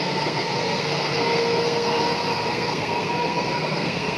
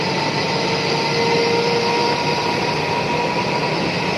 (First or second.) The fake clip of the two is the first